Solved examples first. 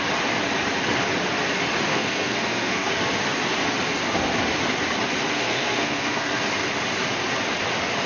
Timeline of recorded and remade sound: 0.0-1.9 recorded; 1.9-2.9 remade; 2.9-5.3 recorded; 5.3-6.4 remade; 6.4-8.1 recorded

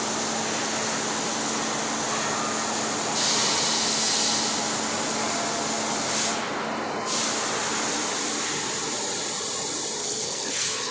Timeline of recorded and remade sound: 0.0-10.0 recorded; 10.0-10.9 remade

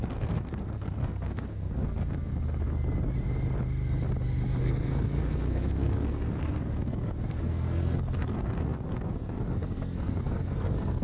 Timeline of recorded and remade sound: 0.0-2.3 remade; 2.3-4.6 recorded; 4.6-11.0 remade

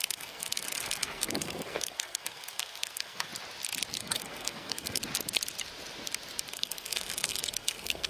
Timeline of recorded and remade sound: 0.0-3.3 remade; 3.3-3.9 recorded; 3.9-5.0 remade; 5.0-6.5 recorded; 6.5-8.1 remade

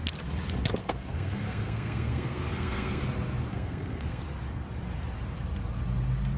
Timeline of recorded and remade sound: 0.0-0.8 recorded; 0.8-3.0 remade; 3.0-3.5 recorded; 3.5-4.2 remade; 4.2-6.4 recorded

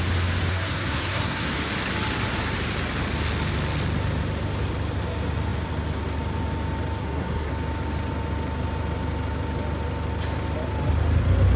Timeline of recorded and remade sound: 0.0-0.5 recorded; 0.5-1.5 remade; 1.5-7.0 recorded; 7.0-7.5 remade; 7.5-11.6 recorded

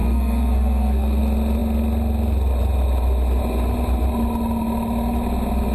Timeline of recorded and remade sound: 0.0-1.2 remade; 1.2-5.7 recorded

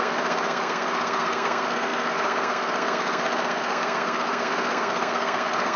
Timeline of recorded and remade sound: 0.0-5.8 remade